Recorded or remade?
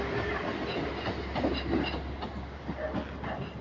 recorded